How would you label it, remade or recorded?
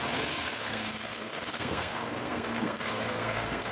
remade